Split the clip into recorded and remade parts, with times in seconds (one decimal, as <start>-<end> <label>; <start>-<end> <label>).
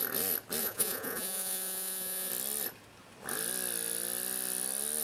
0.0-0.6 recorded; 0.6-2.3 remade; 2.3-5.0 recorded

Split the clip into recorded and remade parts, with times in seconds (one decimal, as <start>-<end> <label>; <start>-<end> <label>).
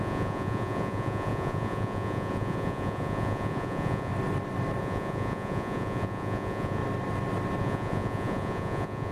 0.0-4.1 remade; 4.1-4.8 recorded; 4.8-6.8 remade; 6.8-7.6 recorded; 7.6-9.1 remade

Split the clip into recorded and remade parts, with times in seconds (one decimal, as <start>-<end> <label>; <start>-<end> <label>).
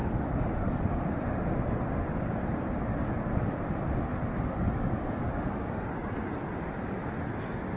0.0-1.0 remade; 1.0-2.9 recorded; 2.9-3.6 remade; 3.6-4.1 recorded; 4.1-5.6 remade; 5.6-7.8 recorded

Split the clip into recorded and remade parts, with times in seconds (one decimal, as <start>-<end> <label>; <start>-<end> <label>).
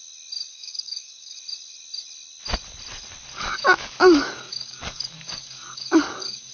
0.0-0.5 recorded; 0.5-1.4 remade; 1.4-3.3 recorded; 3.3-6.5 remade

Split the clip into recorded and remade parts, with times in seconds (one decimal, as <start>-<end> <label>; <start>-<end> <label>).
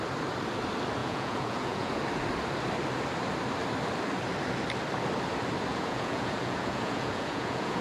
0.0-1.0 recorded; 1.0-2.0 remade; 2.0-5.7 recorded; 5.7-7.8 remade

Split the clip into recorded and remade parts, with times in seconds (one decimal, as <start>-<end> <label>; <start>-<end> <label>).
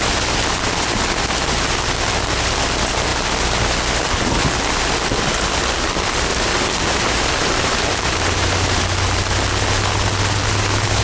0.0-6.3 recorded; 6.3-8.8 remade; 8.8-11.0 recorded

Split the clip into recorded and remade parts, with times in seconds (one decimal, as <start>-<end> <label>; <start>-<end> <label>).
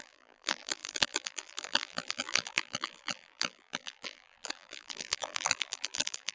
0.0-6.3 remade